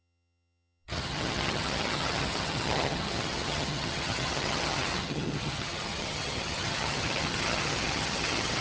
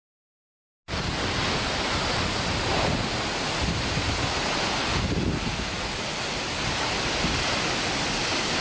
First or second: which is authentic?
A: second